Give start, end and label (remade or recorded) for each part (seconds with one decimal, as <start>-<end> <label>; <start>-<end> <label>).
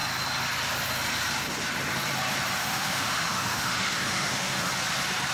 0.0-2.6 recorded; 2.6-4.7 remade; 4.7-5.3 recorded